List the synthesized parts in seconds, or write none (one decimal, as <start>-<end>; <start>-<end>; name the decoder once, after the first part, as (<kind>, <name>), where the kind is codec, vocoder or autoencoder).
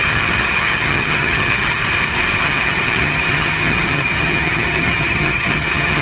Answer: 0.0-1.8 (vocoder, HiFi-GAN); 2.4-6.0